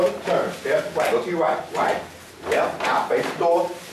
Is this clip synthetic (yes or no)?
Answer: no